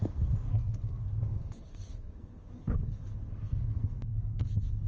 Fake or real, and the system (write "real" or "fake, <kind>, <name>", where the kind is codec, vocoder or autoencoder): fake, codec, SNAC